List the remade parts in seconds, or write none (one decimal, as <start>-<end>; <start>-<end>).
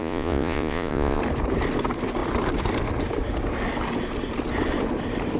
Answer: 0.0-1.2